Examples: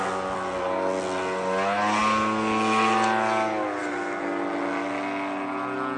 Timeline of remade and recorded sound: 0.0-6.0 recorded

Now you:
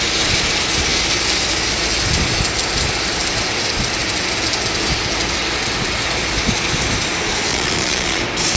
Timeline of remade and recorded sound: 0.0-7.5 recorded; 7.5-8.2 remade; 8.2-8.6 recorded

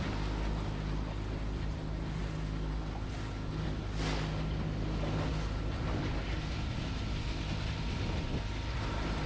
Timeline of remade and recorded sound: 0.0-9.3 recorded

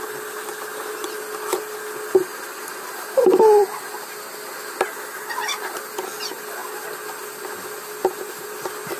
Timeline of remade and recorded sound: 0.0-9.0 recorded

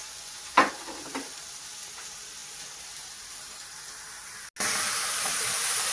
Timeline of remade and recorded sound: 0.0-0.7 remade; 0.7-5.9 recorded

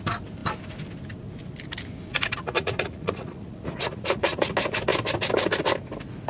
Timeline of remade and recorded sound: 0.0-2.1 recorded; 2.1-4.5 remade; 4.5-6.3 recorded

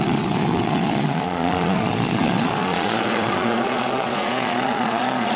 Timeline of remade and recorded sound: 0.0-5.4 remade